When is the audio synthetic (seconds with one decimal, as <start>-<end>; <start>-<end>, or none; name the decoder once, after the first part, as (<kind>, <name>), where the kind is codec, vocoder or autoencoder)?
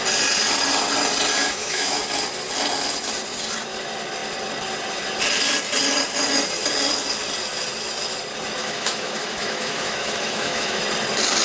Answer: 1.4-2.0 (autoencoder, DAC-VAE); 8.6-10.8